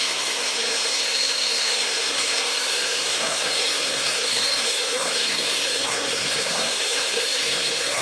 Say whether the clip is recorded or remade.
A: remade